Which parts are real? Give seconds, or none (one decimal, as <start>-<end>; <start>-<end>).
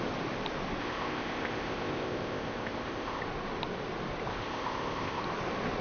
0.0-0.8; 3.2-4.3; 5.2-5.8